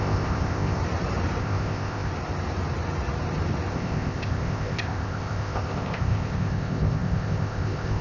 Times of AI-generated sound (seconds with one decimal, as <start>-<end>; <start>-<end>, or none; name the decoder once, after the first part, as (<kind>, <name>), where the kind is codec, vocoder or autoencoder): 0.0-0.8 (codec, ZipCodec); 1.4-2.1; 3.7-8.0